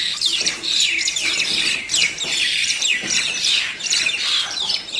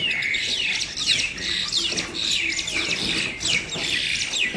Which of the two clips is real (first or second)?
second